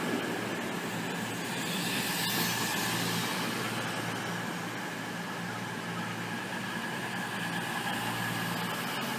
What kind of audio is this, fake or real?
real